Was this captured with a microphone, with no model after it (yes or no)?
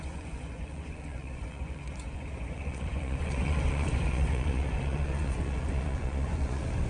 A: no